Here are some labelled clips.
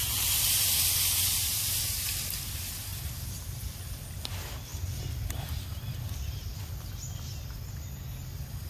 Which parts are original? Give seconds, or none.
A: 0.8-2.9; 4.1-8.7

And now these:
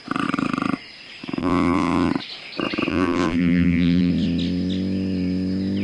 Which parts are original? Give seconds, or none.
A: 0.0-1.4; 2.1-2.9; 4.1-5.8

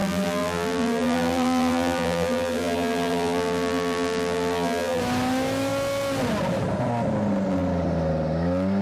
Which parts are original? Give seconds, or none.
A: 5.0-8.8

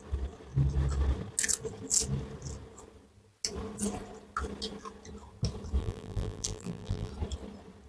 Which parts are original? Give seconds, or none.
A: 0.0-5.8; 7.1-7.9

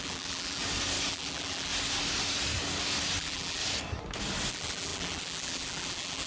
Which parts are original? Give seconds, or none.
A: 0.6-1.1; 1.7-3.2; 3.6-4.5